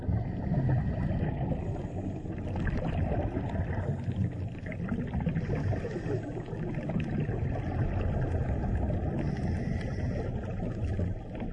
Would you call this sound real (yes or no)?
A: yes